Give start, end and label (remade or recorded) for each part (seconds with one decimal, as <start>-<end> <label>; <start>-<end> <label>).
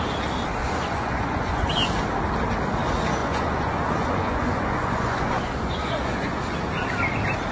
0.0-0.6 recorded; 0.6-1.6 remade; 1.6-3.2 recorded; 3.2-6.4 remade; 6.4-7.5 recorded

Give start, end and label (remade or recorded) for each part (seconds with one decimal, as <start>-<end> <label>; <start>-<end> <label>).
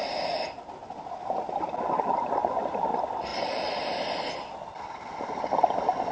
0.0-0.8 recorded; 0.8-1.5 remade; 1.5-3.3 recorded; 3.3-4.3 remade; 4.3-6.1 recorded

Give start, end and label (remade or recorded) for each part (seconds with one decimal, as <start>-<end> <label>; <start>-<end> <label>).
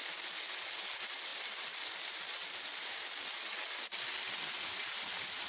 0.0-5.5 recorded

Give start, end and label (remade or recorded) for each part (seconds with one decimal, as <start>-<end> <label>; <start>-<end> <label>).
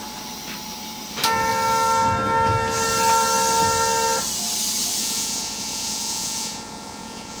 0.0-5.0 recorded; 5.0-7.4 remade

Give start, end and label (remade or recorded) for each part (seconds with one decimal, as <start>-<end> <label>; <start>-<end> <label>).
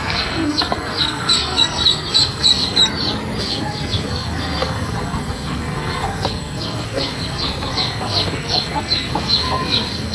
0.0-2.8 remade; 2.8-3.4 recorded; 3.4-10.1 remade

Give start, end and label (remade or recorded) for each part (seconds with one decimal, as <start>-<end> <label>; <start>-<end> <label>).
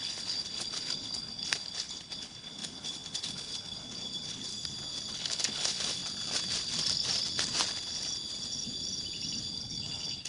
0.0-4.5 remade; 4.5-5.1 recorded; 5.1-6.0 remade; 6.0-9.5 recorded; 9.5-10.3 remade